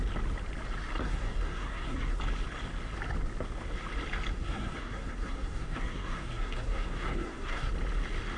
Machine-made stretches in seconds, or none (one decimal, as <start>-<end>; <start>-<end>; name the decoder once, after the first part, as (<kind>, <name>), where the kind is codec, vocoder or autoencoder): 1.0-2.2 (codec, SNAC); 4.3-7.7

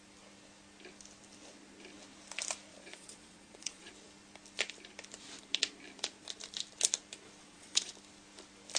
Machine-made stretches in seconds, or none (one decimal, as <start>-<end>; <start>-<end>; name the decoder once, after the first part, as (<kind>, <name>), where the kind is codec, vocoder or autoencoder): 2.7-3.9 (vocoder, Vocos); 7.4-7.9